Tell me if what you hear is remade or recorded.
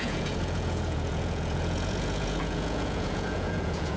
remade